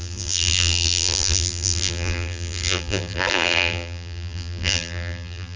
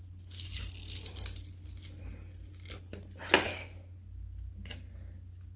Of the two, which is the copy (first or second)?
first